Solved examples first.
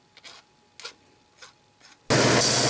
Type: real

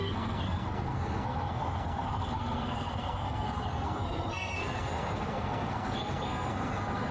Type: fake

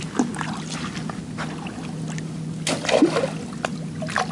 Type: real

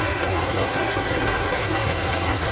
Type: fake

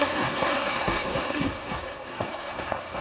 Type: fake